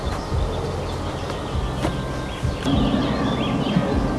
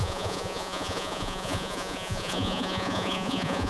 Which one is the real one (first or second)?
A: first